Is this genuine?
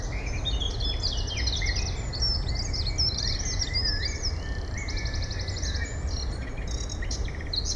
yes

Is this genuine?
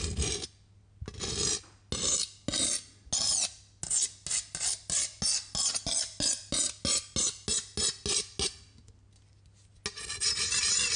yes